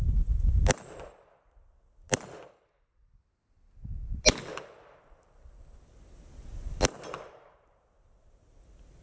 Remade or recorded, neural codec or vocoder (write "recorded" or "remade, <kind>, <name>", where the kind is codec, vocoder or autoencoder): recorded